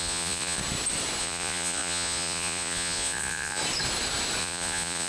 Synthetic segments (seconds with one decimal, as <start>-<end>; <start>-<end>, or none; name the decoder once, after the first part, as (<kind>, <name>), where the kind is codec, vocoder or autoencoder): 0.0-0.6 (vocoder, Vocos); 1.2-3.6; 4.4-5.1